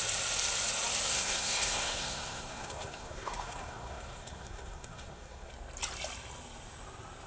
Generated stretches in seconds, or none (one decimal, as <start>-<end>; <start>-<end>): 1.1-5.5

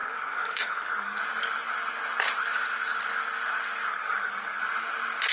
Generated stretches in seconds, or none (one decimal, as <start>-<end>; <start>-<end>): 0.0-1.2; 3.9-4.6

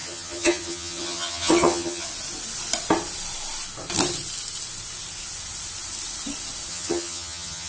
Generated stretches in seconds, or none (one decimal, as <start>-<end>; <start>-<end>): 0.0-2.1; 6.7-7.7